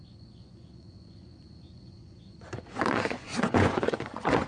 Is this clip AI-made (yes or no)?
yes